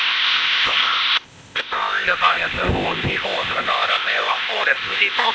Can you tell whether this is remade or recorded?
remade